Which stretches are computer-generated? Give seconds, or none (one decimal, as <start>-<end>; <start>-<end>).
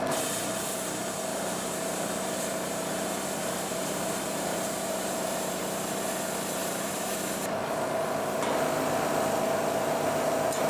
1.3-5.6; 6.6-7.2